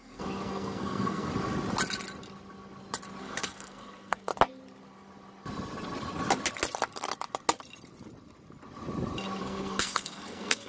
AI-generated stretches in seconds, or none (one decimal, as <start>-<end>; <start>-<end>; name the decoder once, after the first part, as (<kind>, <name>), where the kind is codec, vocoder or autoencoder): 0.0-1.3 (codec, SNAC); 3.2-4.3; 9.4-10.7